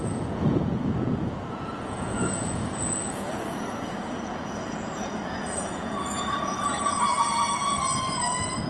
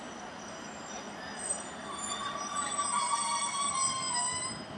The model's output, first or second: first